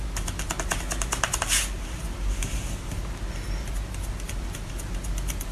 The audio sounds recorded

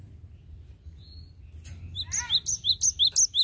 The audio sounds recorded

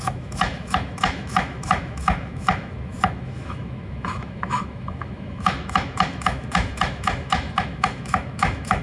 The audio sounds remade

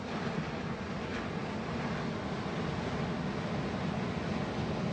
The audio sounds recorded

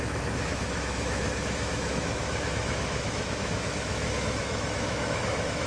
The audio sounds remade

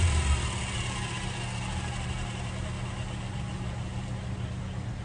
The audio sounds recorded